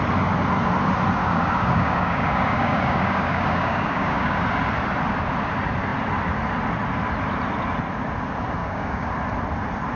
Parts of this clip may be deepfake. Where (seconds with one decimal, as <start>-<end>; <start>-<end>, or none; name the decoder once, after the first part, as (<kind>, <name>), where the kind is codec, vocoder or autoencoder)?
1.2-4.4 (codec, DAC); 8.6-9.1

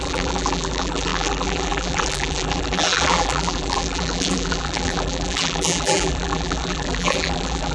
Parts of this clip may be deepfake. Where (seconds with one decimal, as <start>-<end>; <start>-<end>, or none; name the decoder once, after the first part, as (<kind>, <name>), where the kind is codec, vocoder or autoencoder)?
0.0-7.7 (vocoder, BigVGAN v2)

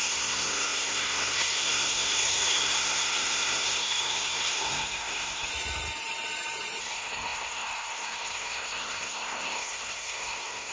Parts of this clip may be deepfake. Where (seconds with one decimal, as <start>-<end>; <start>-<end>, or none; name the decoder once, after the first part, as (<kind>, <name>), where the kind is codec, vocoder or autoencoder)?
0.0-5.5 (codec, SNAC); 6.8-10.7

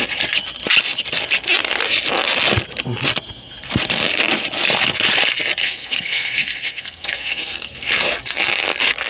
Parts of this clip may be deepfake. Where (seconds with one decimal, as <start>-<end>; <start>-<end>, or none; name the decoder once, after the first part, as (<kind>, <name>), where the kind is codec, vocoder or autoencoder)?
5.6-7.9 (codec, SNAC)

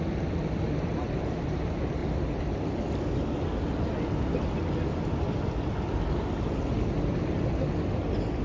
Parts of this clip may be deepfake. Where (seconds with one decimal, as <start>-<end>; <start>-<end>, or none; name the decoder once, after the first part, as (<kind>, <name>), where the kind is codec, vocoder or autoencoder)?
none

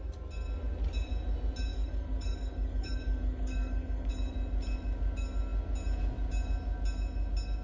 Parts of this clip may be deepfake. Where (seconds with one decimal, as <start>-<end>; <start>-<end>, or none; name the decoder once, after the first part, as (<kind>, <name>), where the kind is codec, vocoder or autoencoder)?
1.7-4.1 (codec, DAC)